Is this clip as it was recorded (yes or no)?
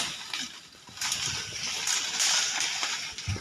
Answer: yes